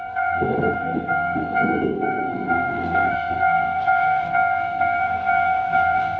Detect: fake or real fake